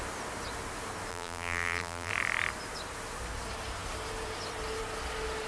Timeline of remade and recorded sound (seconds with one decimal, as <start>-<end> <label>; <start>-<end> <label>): 0.0-1.1 recorded; 1.1-2.1 remade; 2.1-5.5 recorded